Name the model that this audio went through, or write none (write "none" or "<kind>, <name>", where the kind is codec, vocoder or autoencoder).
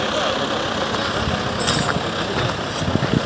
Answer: none